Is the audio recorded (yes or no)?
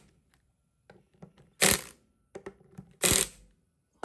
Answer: yes